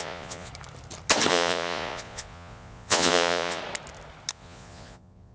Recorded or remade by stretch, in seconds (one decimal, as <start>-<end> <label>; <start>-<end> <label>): 0.0-0.5 remade; 0.5-1.3 recorded; 1.3-3.6 remade; 3.6-4.3 recorded; 4.3-5.3 remade